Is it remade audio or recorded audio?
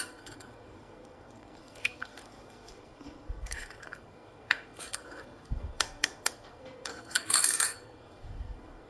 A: remade